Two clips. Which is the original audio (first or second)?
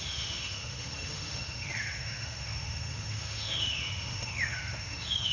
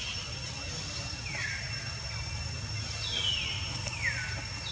second